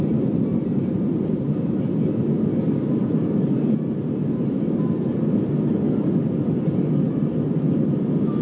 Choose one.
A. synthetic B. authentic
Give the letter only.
B